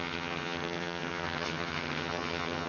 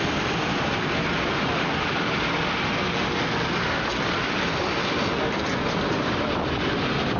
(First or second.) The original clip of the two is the second